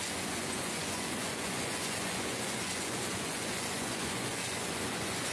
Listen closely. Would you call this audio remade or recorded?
remade